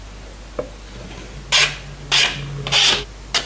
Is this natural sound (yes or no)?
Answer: yes